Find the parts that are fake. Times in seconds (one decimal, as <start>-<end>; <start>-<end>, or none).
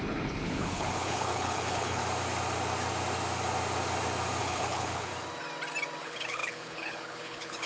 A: 0.0-2.0; 4.4-5.1; 6.0-7.7